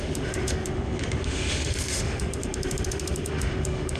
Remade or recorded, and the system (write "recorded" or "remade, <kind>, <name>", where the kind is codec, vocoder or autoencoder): remade, autoencoder, DAC-VAE